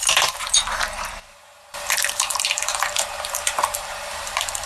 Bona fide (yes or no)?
no